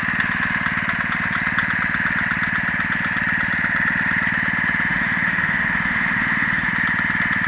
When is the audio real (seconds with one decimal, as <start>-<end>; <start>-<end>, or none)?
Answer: 0.0-4.9; 6.7-7.5